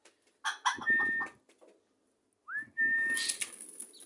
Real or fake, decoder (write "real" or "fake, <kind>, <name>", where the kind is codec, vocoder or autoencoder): real